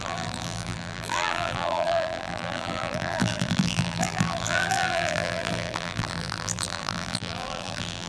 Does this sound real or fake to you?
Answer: fake